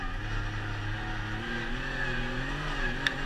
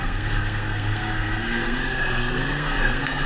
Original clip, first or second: first